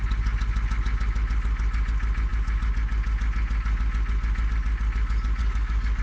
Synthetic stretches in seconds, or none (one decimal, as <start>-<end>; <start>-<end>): 5.4-6.0